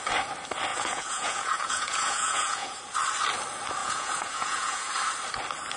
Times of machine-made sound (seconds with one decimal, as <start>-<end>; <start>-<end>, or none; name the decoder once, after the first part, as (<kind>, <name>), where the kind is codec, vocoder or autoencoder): 0.7-2.8 (vocoder, Vocos); 3.8-4.9